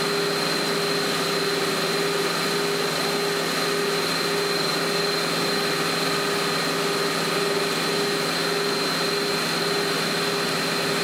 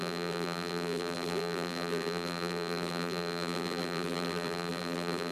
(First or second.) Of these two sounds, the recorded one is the first